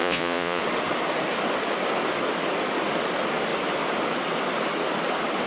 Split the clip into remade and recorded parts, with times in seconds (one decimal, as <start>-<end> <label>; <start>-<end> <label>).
0.0-0.6 remade; 0.6-5.5 recorded